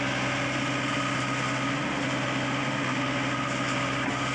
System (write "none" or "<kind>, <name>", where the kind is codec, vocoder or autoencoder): none